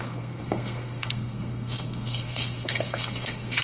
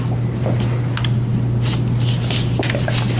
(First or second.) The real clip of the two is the second